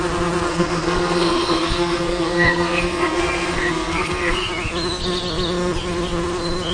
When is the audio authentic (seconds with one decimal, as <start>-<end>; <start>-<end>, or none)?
0.0-0.5; 4.5-6.7